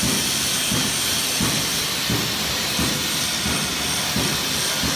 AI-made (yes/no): no